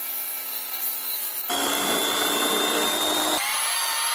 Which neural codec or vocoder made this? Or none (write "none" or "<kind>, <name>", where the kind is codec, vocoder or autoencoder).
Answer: none